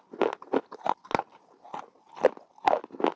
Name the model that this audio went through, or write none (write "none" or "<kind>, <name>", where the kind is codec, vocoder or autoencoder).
none